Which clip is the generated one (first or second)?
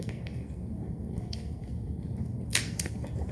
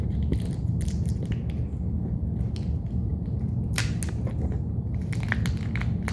first